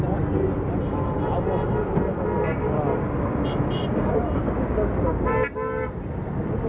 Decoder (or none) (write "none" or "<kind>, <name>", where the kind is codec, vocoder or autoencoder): none